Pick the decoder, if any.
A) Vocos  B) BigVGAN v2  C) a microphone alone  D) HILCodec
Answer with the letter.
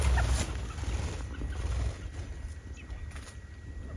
C